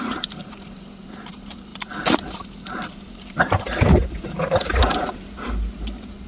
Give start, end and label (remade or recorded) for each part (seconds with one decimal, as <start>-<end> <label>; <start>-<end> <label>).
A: 0.0-1.7 recorded; 1.7-5.5 remade; 5.5-6.3 recorded